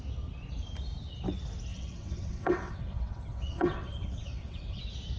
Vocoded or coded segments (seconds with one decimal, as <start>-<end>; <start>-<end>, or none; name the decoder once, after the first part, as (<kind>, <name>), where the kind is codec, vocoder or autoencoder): 1.7-4.8 (vocoder, WaveNeXt)